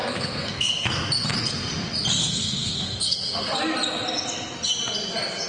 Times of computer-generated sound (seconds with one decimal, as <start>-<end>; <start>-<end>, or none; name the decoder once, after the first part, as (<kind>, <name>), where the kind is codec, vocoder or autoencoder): 0.0-1.1 (codec, SNAC); 2.2-3.6